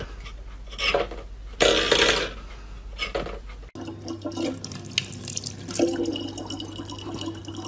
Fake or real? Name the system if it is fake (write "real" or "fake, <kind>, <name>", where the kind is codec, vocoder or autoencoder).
real